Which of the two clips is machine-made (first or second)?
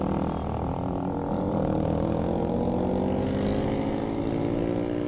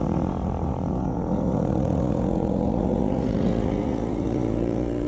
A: second